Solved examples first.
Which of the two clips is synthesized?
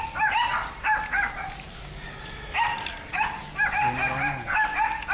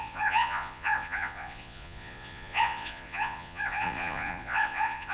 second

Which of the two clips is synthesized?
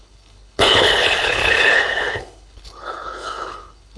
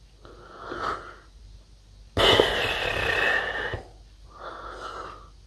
first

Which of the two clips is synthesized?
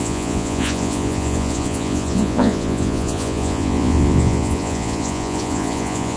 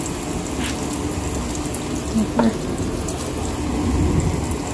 first